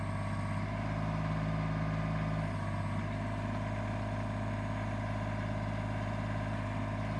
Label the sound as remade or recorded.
recorded